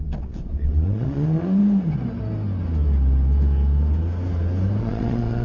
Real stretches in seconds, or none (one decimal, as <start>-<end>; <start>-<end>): 1.6-4.8